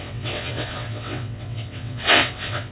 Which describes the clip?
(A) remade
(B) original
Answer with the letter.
A